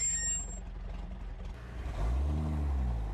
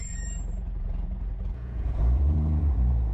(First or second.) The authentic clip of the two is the first